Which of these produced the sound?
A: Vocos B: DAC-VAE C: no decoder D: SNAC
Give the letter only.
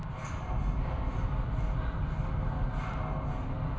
C